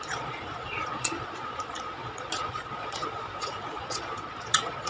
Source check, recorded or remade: remade